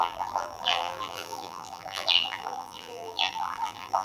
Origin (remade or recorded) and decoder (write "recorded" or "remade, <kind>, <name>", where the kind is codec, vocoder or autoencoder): remade, vocoder, BigVGAN v2